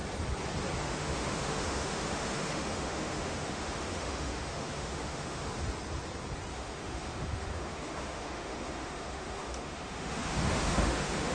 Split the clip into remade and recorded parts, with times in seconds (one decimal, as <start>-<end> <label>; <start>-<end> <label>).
0.0-0.8 recorded; 0.8-5.5 remade; 5.5-6.5 recorded; 6.5-11.3 remade